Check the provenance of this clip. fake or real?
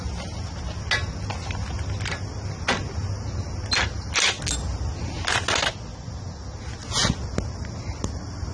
real